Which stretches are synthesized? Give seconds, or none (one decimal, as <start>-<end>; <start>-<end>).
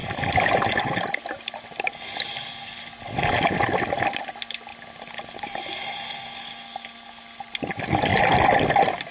none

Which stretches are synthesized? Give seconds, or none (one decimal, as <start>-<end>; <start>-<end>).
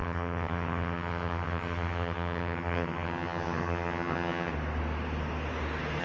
0.0-4.5